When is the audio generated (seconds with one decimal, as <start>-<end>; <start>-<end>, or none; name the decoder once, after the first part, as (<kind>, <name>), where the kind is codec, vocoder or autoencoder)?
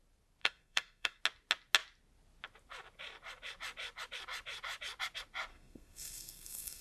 0.4-1.2 (codec, SNAC); 5.5-6.8